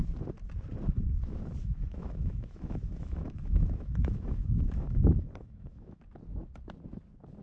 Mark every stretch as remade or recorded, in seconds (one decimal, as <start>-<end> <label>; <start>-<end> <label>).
0.0-1.6 recorded; 1.6-6.0 remade; 6.0-7.4 recorded